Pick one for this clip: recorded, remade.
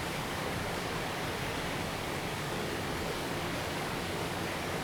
remade